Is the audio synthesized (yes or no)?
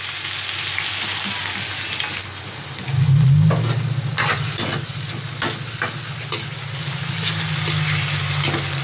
no